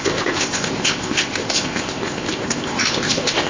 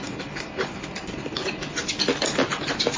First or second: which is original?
second